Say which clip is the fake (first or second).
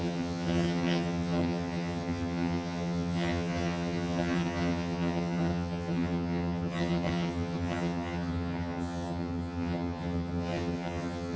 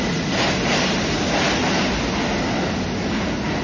first